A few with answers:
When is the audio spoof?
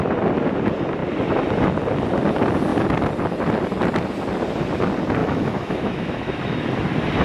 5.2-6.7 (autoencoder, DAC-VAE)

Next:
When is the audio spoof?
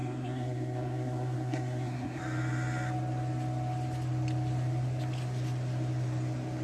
0.0-2.2 (codec, SNAC)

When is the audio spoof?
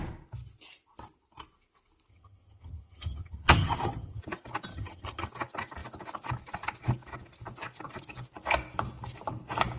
2.1-4.2 (vocoder, HiFi-GAN); 4.7-5.3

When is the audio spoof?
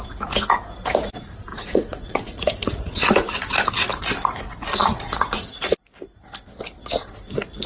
1.5-3.1 (vocoder, Vocos); 4.8-5.8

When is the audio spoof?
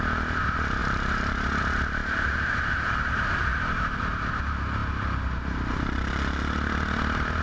2.0-2.6 (vocoder, BigVGAN v2)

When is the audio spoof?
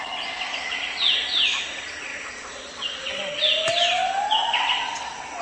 none